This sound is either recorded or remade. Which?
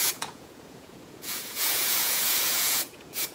remade